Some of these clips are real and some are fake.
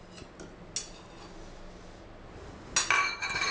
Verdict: real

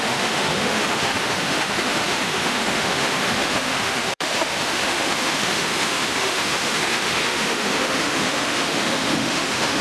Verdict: fake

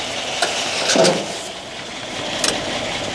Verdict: real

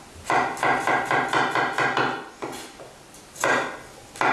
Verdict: real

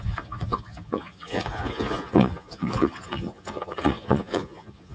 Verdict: fake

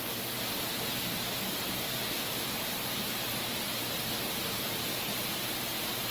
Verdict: real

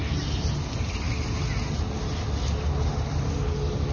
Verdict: real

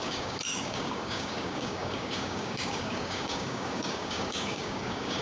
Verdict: fake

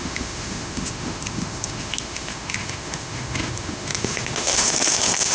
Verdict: fake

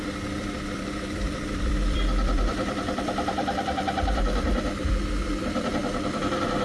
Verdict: fake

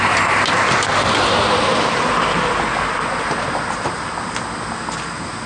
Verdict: real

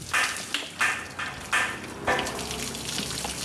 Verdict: real